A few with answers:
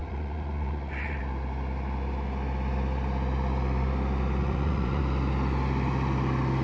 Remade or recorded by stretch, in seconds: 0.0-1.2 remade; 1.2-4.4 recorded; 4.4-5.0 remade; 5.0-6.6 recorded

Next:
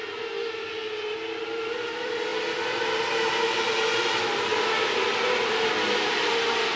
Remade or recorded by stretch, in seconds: 0.0-6.8 recorded